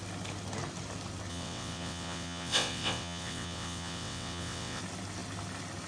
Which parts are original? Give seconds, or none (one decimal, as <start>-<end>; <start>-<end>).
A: 0.0-1.3; 4.8-5.9